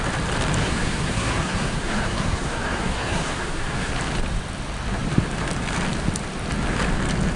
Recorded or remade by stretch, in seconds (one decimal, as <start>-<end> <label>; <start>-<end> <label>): 0.0-0.6 recorded; 0.6-3.9 remade; 3.9-7.4 recorded